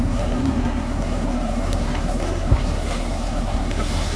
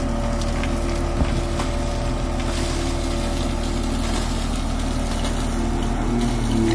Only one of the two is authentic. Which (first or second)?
second